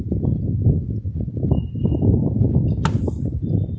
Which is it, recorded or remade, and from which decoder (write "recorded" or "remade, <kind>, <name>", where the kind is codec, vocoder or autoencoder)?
recorded